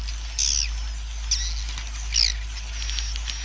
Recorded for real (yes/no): yes